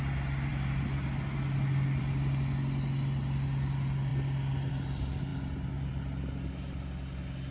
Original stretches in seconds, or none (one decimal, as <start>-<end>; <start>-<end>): 0.0-7.5